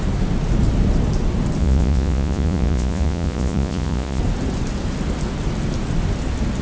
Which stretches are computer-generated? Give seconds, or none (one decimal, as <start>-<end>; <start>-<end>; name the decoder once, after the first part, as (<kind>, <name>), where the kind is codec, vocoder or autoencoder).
1.6-4.2 (vocoder, Vocos)